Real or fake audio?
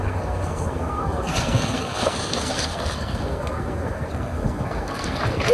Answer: fake